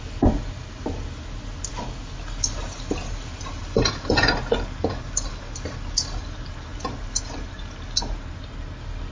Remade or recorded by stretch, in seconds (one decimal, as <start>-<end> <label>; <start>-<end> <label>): 0.0-9.1 recorded